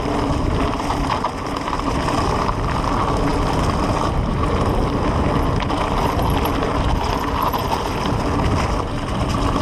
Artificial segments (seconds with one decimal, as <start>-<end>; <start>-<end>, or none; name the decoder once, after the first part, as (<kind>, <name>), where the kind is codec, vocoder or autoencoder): none